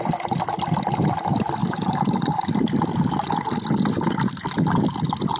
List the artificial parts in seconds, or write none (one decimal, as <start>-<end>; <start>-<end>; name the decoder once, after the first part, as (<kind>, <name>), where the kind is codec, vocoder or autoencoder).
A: none